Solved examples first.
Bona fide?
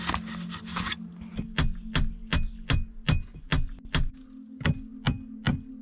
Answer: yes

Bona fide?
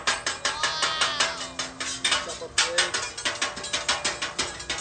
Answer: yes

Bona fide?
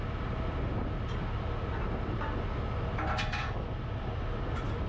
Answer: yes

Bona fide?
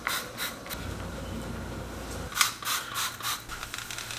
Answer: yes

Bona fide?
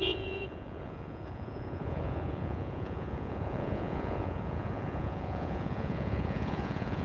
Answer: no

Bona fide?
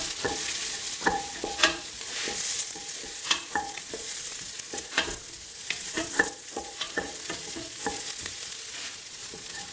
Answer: no